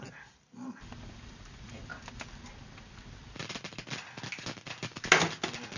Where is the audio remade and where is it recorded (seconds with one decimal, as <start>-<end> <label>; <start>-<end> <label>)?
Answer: 0.0-1.9 remade; 1.9-5.8 recorded